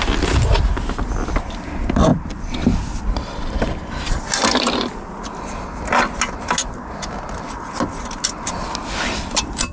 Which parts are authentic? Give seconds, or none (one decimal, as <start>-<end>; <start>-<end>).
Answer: 0.0-9.7